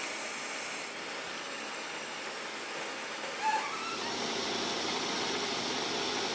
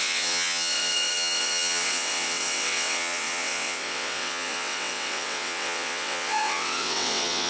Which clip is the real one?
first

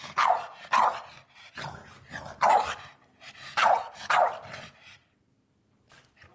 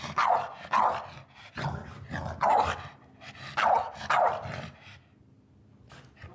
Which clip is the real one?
second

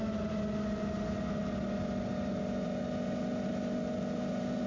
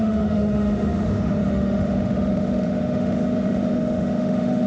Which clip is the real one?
first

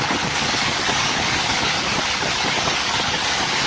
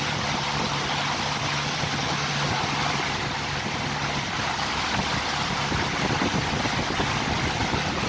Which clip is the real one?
second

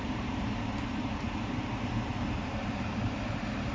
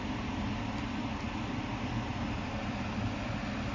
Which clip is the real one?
second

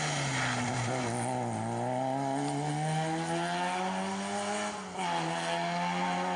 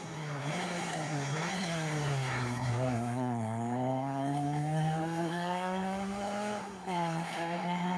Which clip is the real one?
first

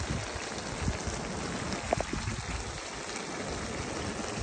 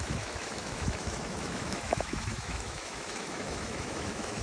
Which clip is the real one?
first